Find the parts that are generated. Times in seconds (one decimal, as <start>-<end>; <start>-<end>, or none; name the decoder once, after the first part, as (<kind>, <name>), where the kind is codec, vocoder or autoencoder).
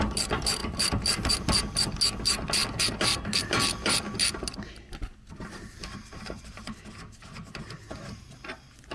5.8-6.7 (vocoder, BigVGAN v2)